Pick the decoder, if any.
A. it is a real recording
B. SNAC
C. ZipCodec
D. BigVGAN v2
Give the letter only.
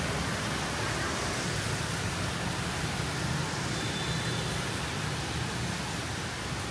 A